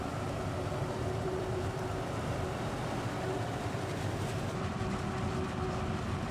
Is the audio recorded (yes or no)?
no